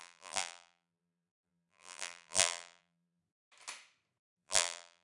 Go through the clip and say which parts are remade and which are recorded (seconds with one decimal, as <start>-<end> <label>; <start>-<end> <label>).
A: 0.0-3.2 remade; 3.2-4.3 recorded; 4.3-5.0 remade